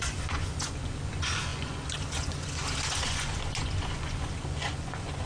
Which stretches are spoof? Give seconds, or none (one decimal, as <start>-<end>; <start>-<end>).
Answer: 0.0-5.3